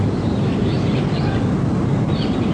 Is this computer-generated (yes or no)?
no